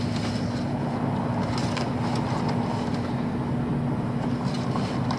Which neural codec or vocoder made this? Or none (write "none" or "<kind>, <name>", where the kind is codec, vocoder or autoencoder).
none